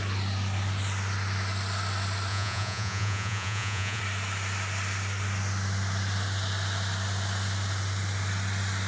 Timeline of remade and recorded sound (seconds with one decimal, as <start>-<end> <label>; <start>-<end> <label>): 0.0-2.3 recorded; 2.3-4.0 remade; 4.0-8.9 recorded